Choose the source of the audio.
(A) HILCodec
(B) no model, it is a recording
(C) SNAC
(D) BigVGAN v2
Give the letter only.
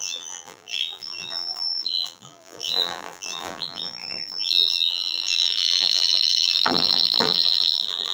D